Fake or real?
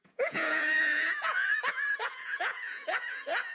fake